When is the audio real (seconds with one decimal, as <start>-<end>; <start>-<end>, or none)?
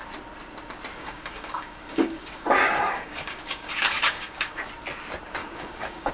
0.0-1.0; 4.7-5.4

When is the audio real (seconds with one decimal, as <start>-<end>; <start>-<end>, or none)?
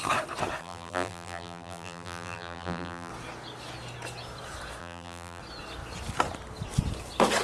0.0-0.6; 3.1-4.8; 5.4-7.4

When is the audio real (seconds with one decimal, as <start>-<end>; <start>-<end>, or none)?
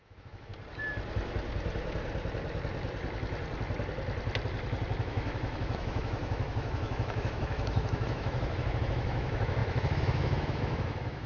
0.5-5.0